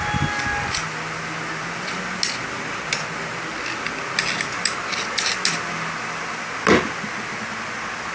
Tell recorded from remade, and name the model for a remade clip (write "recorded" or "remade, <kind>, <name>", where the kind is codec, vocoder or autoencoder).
recorded